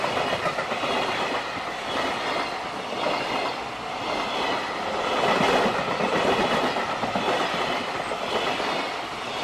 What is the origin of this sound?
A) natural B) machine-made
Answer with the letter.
A